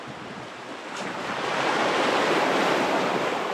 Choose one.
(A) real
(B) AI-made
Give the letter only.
B